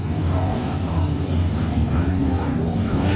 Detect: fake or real fake